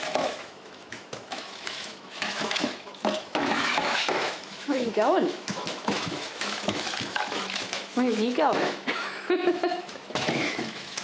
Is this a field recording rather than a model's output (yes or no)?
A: no